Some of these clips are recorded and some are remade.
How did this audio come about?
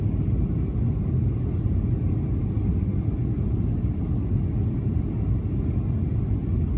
recorded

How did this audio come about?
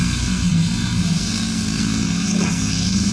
remade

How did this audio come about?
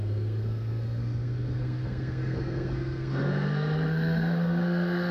remade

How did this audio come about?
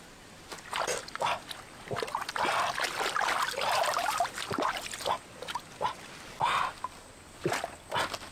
recorded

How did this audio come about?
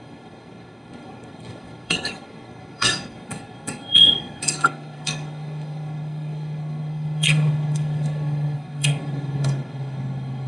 remade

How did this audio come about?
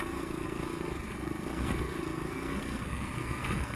remade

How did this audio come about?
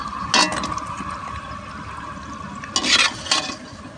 recorded